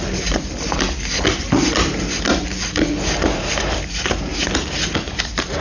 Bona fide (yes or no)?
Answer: yes